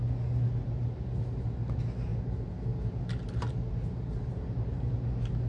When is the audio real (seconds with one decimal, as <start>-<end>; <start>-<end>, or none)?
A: 0.0-5.5